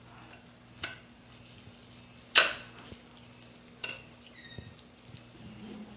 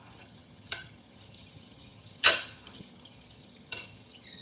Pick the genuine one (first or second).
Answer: first